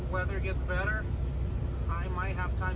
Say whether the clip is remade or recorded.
recorded